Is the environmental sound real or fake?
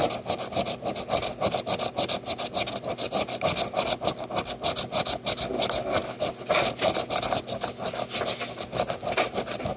real